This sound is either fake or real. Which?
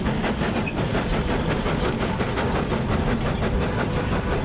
real